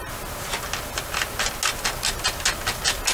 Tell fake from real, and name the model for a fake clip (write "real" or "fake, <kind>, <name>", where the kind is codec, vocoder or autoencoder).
real